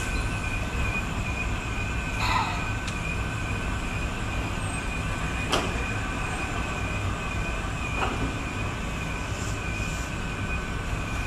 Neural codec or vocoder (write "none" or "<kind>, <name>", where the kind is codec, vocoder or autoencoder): none